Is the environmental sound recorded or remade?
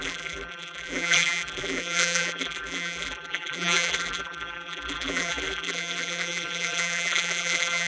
remade